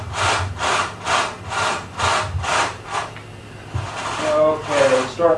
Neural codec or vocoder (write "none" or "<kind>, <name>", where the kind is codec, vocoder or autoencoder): none